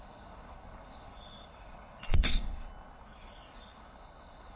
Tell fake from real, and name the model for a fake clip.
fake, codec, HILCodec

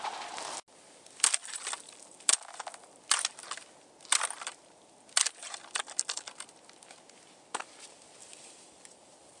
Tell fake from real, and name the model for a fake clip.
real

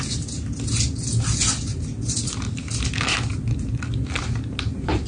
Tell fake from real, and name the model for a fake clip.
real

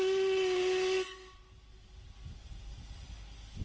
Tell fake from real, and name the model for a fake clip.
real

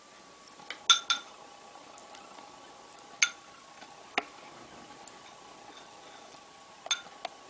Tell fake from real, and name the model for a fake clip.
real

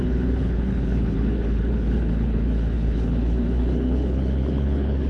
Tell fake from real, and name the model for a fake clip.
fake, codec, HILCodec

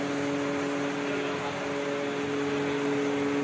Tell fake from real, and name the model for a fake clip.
real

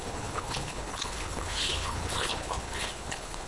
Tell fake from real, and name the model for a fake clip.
fake, codec, HILCodec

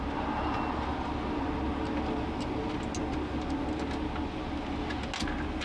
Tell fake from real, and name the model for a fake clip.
real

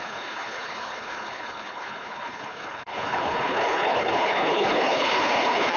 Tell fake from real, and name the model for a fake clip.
fake, codec, HILCodec